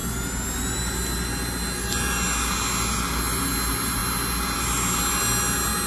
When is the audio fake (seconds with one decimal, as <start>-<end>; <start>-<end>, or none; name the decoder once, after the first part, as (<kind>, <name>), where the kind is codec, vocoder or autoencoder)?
none